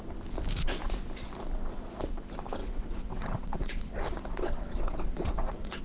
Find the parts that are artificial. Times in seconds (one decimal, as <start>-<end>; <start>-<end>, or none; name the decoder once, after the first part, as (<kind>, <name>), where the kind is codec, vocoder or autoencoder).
2.6-5.8 (vocoder, WaveNeXt)